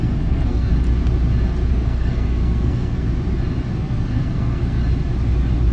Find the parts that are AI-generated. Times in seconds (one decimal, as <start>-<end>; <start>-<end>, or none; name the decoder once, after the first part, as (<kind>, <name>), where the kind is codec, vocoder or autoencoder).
0.0-0.7 (codec, SNAC); 1.7-3.1; 3.8-4.8